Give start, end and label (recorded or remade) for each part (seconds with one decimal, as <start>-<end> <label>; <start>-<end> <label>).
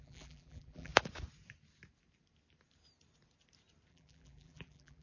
0.0-0.9 remade; 0.9-3.9 recorded; 3.9-5.0 remade